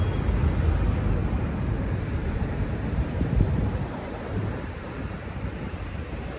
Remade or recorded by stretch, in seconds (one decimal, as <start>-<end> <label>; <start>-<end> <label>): 0.0-1.2 recorded; 1.2-1.8 remade; 1.8-2.2 recorded; 2.2-6.0 remade; 6.0-6.4 recorded

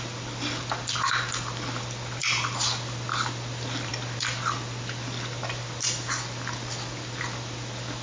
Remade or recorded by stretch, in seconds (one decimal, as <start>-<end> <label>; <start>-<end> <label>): 0.0-8.0 recorded

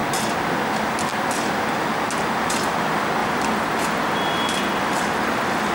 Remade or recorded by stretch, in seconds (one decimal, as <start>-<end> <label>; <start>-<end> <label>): 0.0-3.2 recorded; 3.2-5.7 remade

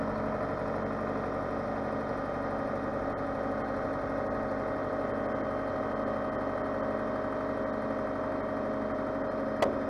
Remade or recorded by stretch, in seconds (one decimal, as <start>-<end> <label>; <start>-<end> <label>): 0.0-9.9 recorded